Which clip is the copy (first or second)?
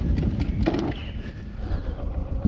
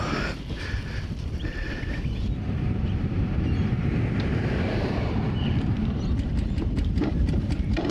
second